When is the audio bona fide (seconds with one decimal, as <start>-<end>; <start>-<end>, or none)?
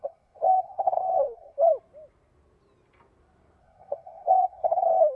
1.7-3.6